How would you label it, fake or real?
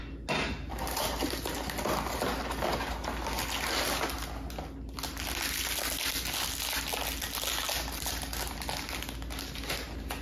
real